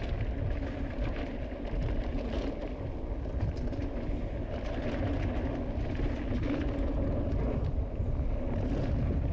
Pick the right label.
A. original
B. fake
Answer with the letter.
A